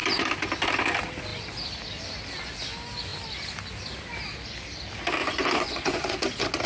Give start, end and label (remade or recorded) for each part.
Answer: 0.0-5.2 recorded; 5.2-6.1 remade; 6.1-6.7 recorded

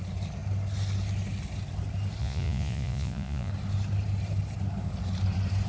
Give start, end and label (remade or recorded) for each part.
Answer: 0.0-2.2 recorded; 2.2-3.5 remade; 3.5-5.7 recorded

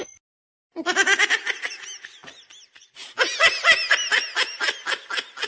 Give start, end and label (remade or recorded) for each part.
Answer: 0.0-5.5 recorded

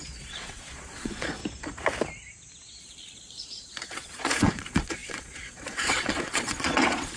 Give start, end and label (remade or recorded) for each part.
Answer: 0.0-1.4 remade; 1.4-2.8 recorded; 2.8-7.2 remade

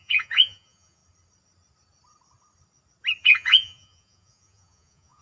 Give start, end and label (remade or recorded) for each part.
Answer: 0.0-1.0 remade; 1.0-3.2 recorded; 3.2-5.2 remade

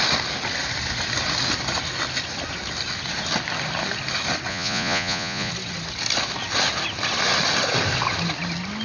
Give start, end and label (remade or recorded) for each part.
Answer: 0.0-4.5 recorded; 4.5-5.5 remade; 5.5-8.8 recorded

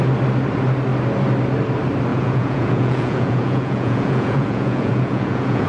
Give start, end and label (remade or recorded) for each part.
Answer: 0.0-2.1 recorded; 2.1-5.7 remade

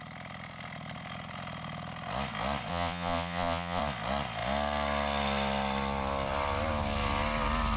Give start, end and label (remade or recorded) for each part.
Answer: 0.0-2.7 recorded; 2.7-3.8 remade; 3.8-7.8 recorded